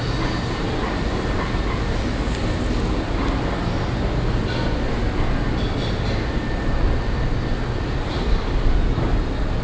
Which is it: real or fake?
real